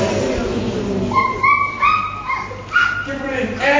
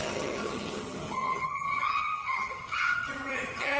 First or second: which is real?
first